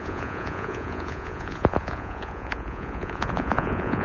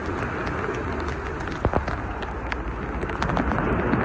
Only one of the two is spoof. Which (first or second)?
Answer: first